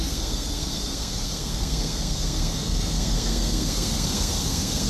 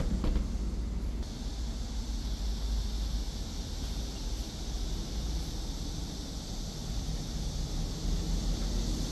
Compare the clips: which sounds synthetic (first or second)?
first